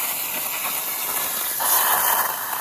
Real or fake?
fake